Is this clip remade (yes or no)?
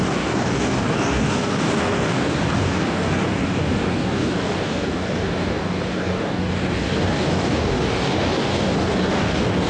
yes